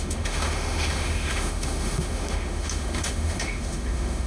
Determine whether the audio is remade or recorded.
remade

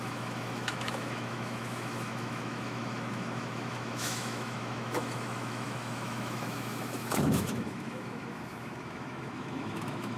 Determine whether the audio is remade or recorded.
remade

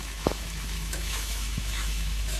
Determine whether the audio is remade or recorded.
remade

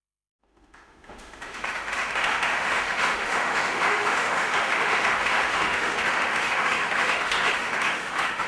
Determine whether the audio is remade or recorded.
remade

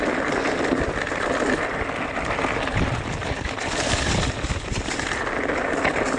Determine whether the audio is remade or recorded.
recorded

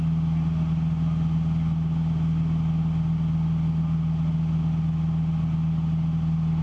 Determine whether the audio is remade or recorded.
recorded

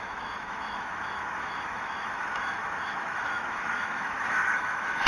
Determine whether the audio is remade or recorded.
remade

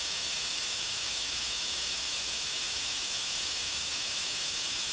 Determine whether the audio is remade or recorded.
remade